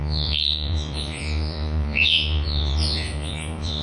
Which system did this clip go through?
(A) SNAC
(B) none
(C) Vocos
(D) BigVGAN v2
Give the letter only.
C